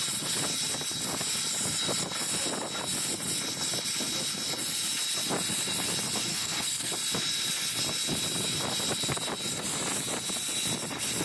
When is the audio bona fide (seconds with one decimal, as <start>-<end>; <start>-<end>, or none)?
0.0-6.3; 6.9-11.2